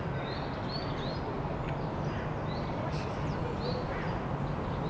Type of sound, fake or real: real